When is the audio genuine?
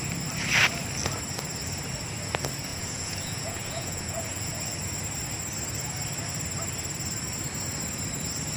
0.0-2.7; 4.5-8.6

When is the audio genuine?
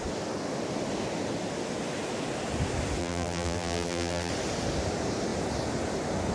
0.0-3.0; 4.3-6.3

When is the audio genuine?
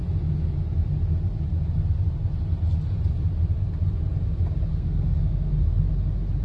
0.0-4.7; 5.5-6.4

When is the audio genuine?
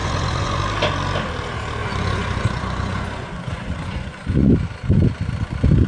0.6-1.8; 4.5-5.9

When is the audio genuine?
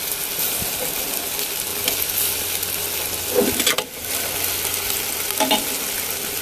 0.0-6.4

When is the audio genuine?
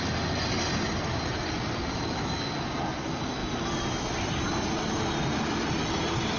0.0-6.4